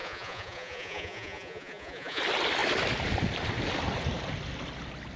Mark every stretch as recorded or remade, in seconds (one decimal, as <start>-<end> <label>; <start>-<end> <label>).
0.0-2.2 remade; 2.2-5.2 recorded